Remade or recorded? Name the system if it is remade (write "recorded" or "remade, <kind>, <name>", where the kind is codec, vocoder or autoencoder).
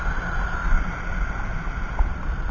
remade, vocoder, BigVGAN v2